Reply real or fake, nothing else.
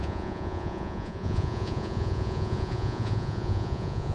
fake